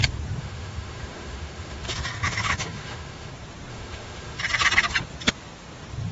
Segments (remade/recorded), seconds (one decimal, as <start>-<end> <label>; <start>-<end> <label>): 0.0-0.4 recorded; 0.4-3.3 remade; 3.3-3.7 recorded; 3.7-4.4 remade; 4.4-6.1 recorded